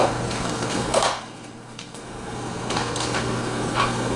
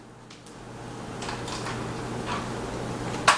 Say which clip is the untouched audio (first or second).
second